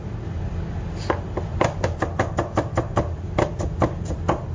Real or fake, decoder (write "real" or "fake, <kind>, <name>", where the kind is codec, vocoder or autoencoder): real